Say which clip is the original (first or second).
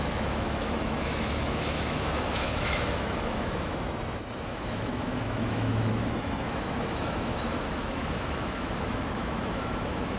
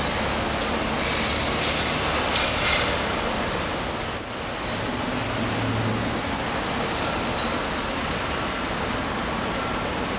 second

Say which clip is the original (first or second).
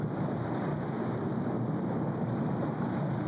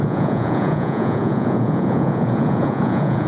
first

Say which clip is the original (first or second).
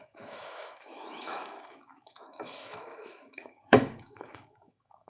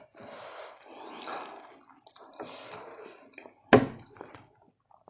second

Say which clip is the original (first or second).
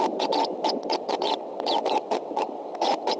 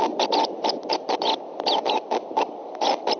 second